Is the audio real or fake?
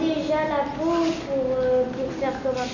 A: real